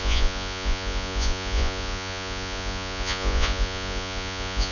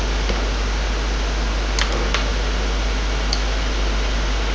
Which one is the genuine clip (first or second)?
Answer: second